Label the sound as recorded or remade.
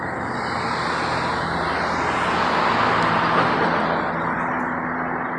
recorded